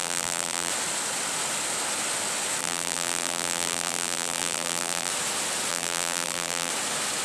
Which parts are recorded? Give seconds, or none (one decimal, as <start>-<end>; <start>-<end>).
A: 0.7-2.6; 5.1-5.7; 6.7-7.2